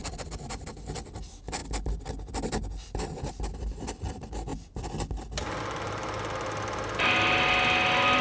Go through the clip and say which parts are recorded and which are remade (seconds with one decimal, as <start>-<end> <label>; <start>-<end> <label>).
0.0-8.2 recorded